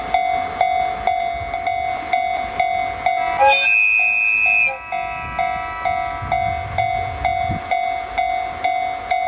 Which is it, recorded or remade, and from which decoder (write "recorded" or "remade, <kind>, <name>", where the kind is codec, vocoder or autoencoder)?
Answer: recorded